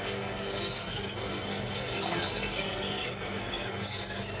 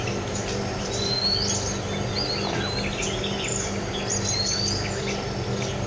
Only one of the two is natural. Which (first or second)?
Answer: second